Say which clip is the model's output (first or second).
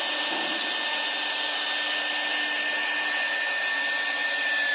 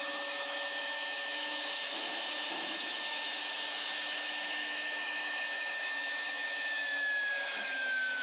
second